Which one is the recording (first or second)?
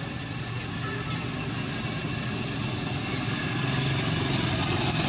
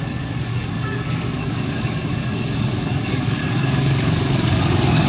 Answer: first